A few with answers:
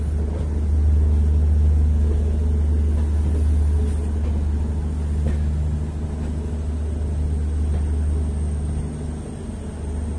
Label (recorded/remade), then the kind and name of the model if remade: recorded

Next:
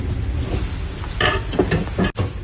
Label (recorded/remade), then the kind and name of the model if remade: recorded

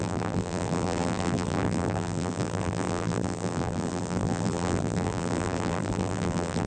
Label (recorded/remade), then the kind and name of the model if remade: remade, vocoder, BigVGAN v2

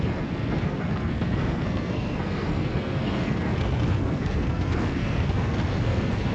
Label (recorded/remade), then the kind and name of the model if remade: remade, codec, SNAC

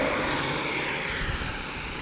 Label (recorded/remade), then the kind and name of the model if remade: recorded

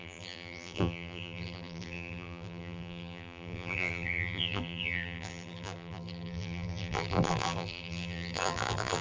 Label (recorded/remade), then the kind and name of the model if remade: remade, vocoder, BigVGAN v2